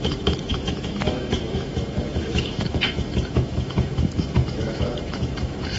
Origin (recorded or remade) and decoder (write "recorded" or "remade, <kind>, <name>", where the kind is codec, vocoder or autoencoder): remade, autoencoder, DAC-VAE